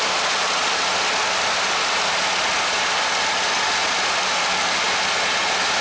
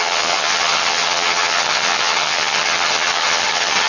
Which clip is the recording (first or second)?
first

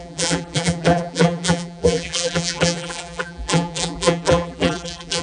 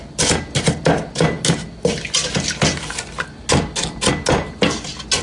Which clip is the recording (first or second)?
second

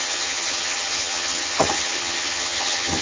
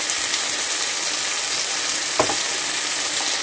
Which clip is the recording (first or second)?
second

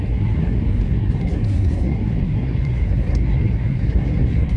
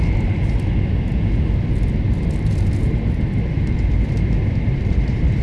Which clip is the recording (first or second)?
second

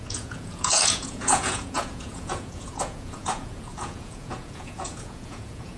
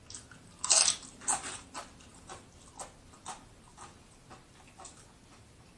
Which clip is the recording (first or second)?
second